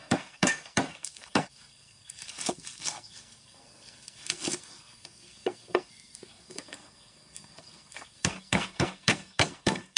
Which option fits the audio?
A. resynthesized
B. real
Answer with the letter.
A